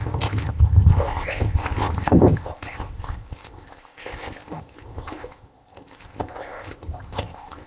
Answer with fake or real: fake